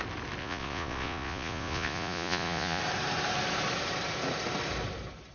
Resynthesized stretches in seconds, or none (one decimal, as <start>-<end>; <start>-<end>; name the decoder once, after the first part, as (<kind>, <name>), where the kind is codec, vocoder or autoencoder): 0.4-2.8 (vocoder, Vocos)